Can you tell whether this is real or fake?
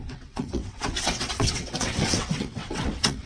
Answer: fake